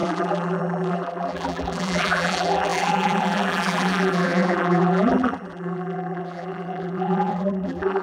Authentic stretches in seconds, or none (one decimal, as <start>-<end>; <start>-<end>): none